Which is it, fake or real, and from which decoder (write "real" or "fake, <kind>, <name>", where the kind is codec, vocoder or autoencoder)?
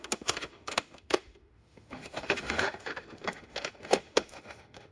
fake, autoencoder, DAC-VAE